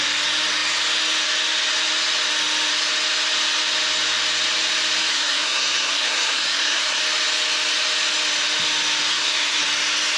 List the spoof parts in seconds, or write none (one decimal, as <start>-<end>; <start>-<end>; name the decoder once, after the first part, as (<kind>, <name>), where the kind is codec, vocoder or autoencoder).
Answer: 5.1-7.0 (codec, SNAC); 9.1-9.6